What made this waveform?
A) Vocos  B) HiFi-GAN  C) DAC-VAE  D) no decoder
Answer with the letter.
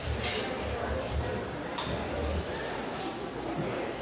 D